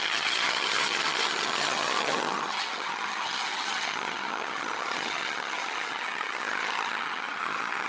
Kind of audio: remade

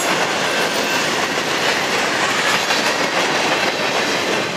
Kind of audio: recorded